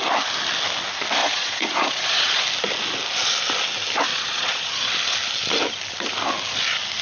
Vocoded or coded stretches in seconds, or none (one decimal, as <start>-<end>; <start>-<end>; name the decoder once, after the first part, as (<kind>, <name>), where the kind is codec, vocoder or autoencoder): 1.2-2.4 (vocoder, Vocos); 4.1-4.9